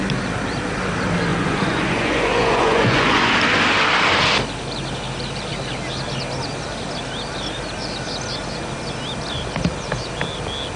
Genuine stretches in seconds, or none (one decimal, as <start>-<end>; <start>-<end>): 0.0-1.3; 3.3-10.8